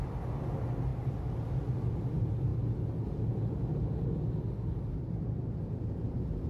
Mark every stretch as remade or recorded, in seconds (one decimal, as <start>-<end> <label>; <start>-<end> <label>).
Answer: 0.0-6.5 recorded